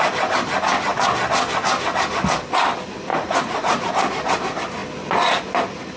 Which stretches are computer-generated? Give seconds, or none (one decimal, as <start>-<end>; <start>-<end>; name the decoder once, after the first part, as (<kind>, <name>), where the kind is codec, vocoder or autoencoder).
3.1-3.9 (vocoder, Vocos)

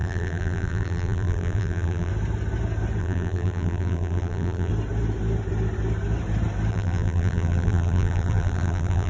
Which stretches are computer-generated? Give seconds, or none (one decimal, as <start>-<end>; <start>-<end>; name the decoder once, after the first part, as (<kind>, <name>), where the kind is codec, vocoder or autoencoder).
0.0-2.1 (vocoder, BigVGAN v2); 3.0-4.7; 6.7-9.1